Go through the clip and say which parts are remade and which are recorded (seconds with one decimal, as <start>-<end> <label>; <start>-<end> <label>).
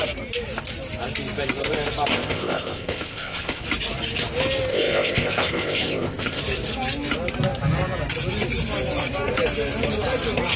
0.0-2.1 recorded; 2.1-3.6 remade; 3.6-4.7 recorded; 4.7-6.4 remade; 6.4-10.6 recorded